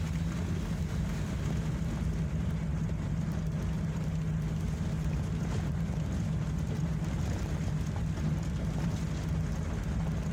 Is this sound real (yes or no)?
yes